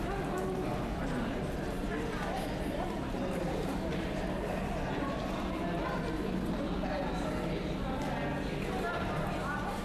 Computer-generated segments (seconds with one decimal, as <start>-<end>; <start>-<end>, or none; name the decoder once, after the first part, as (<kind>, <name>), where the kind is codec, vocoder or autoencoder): none